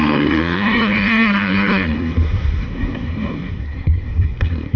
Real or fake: fake